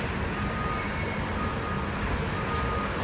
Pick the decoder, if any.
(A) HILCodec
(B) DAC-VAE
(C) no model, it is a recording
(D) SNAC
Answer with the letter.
C